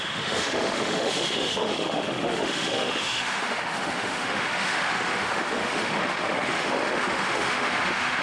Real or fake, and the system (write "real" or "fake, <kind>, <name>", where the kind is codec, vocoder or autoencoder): fake, autoencoder, DAC-VAE